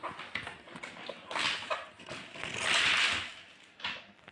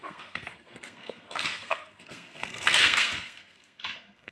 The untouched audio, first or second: first